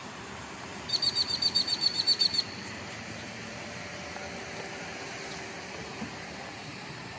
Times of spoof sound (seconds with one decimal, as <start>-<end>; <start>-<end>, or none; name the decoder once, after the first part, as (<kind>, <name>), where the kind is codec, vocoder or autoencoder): 0.0-3.6 (vocoder, BigVGAN v2); 6.6-7.2